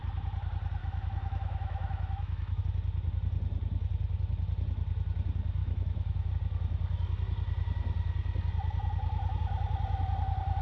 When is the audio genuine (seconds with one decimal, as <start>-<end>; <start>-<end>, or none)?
0.0-0.8; 2.6-5.6; 6.3-10.6

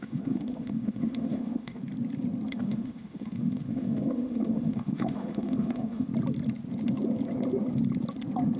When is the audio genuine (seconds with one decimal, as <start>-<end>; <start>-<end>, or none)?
1.8-2.5; 6.1-8.6

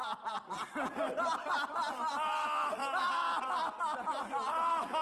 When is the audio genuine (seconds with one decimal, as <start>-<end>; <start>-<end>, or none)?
0.0-5.0

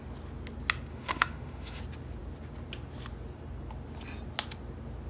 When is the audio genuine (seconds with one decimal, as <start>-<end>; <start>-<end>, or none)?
0.0-0.9; 1.8-5.1

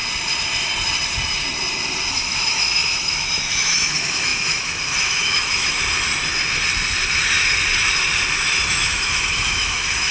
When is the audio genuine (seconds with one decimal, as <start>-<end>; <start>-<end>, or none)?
0.0-2.1; 5.8-8.7

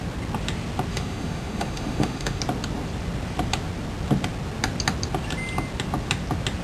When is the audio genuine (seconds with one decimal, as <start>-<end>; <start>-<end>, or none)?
0.0-0.9; 2.4-6.6

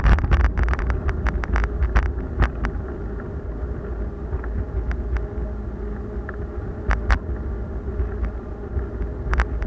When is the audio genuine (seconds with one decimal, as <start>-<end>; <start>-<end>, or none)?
0.0-9.7